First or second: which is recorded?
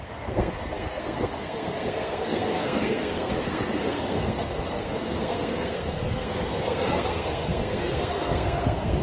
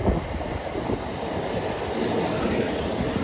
second